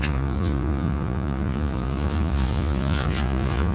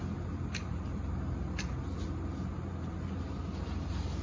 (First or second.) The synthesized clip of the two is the first